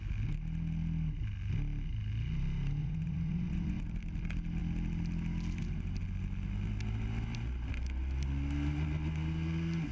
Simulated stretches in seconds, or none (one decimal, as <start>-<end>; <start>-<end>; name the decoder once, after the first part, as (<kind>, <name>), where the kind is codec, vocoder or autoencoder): 2.8-3.8 (vocoder, Vocos)